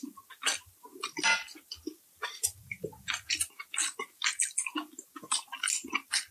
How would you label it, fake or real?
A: real